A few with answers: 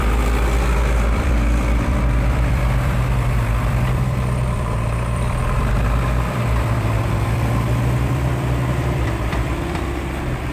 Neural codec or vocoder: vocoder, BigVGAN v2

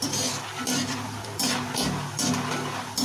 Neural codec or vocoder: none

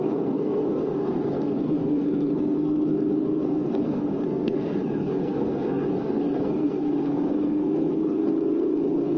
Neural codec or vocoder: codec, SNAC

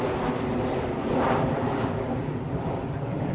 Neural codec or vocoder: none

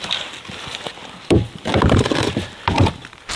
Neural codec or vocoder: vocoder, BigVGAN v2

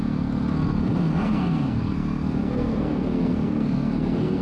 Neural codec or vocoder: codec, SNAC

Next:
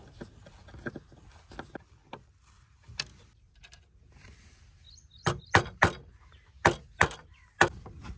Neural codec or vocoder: none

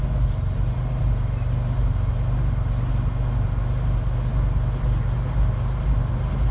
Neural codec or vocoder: none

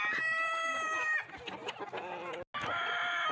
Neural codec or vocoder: none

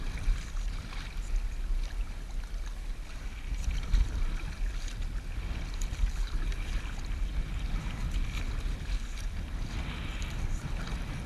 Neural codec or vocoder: none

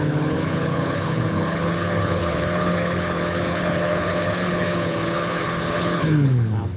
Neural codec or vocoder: codec, HILCodec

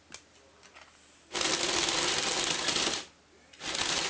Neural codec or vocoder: none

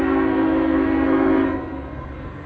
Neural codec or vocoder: codec, SNAC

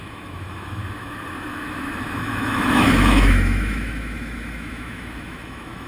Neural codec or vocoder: autoencoder, DAC-VAE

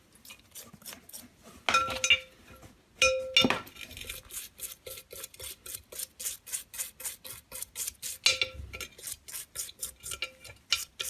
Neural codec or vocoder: none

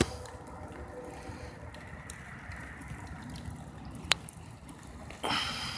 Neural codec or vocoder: vocoder, BigVGAN v2